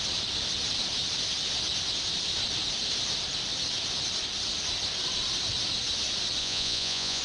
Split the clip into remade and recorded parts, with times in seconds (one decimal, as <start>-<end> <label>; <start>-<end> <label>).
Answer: 0.0-6.4 recorded; 6.4-7.2 remade